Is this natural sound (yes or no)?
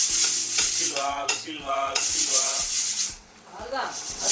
no